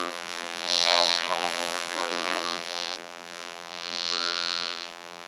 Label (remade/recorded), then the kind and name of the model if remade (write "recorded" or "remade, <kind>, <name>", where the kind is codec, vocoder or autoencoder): remade, vocoder, BigVGAN v2